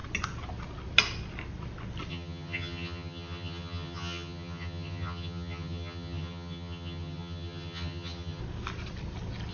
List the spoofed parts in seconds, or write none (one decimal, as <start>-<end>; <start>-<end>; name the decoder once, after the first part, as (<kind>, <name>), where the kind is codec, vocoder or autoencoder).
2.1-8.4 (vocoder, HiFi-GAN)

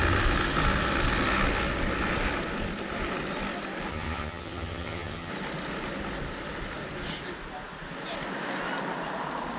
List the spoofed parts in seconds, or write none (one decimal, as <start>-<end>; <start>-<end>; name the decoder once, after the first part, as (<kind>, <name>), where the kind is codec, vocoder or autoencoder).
3.9-5.3 (vocoder, HiFi-GAN)

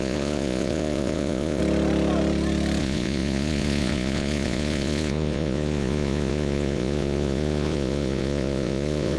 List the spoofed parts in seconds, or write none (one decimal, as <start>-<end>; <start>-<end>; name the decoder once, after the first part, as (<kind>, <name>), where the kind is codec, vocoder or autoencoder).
0.0-1.6 (vocoder, Vocos); 2.8-9.2

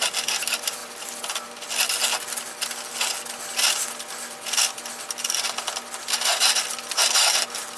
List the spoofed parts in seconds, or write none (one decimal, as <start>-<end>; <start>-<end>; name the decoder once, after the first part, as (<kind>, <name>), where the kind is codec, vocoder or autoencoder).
none